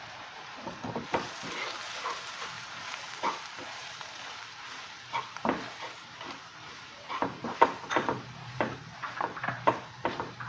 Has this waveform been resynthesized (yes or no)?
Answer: yes